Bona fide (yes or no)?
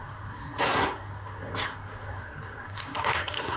no